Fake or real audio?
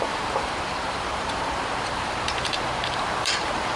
fake